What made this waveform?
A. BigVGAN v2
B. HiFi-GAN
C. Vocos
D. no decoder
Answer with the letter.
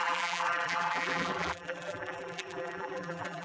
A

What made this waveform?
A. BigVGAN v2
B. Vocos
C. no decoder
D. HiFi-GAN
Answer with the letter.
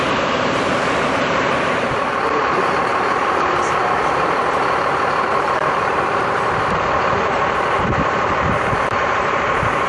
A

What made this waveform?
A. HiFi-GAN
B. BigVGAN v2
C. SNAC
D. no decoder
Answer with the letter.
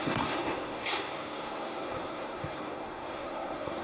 C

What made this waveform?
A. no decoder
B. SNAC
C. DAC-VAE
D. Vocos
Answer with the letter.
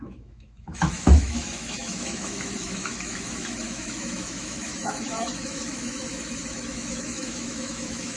C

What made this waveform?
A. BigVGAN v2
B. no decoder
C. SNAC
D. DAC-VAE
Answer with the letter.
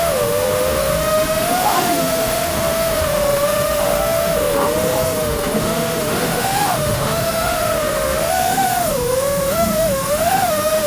D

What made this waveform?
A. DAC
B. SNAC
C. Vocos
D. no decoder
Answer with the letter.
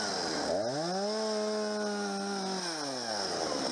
D